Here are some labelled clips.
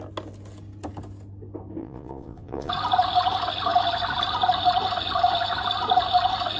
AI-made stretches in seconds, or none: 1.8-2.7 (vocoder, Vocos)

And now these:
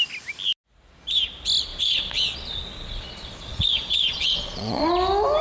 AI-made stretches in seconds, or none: 1.7-4.9 (vocoder, Vocos)

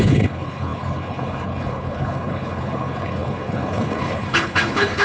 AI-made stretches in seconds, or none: 0.0-5.0 (codec, HILCodec)

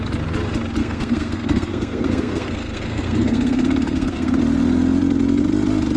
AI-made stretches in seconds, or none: 0.8-4.4 (codec, SNAC)

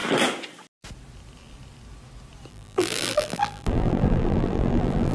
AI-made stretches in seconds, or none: 2.5-5.1 (vocoder, BigVGAN v2)

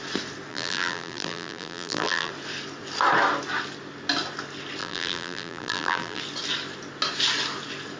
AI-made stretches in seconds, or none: 0.5-2.3 (vocoder, BigVGAN v2); 4.8-6.2

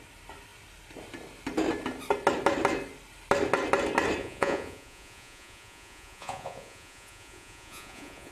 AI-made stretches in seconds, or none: 4.2-8.3 (vocoder, Vocos)

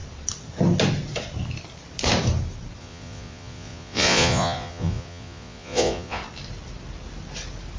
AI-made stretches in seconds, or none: 2.8-6.2 (vocoder, Vocos)